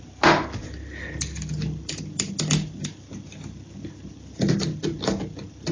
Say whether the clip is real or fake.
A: real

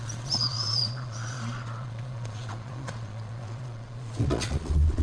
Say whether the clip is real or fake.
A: fake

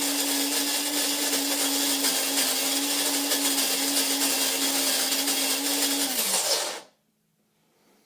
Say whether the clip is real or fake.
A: real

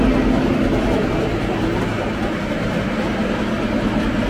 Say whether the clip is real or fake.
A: real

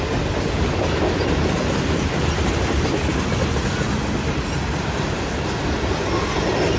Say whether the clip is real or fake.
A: real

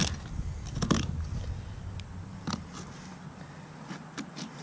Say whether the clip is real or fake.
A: real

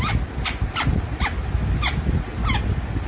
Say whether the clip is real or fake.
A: real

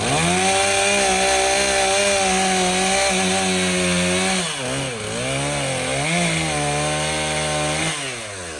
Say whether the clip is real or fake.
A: real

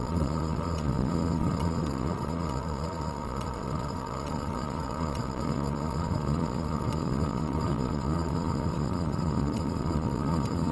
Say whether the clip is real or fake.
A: fake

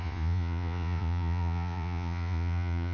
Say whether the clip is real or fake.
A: fake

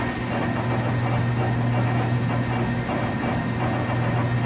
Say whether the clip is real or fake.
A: real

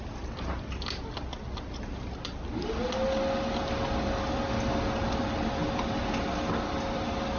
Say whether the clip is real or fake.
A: real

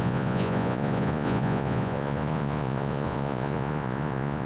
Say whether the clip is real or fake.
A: fake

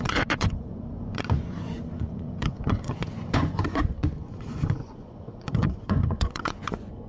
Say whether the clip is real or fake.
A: fake